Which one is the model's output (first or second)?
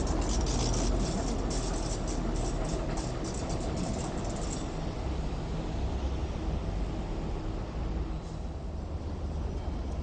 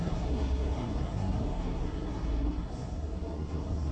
second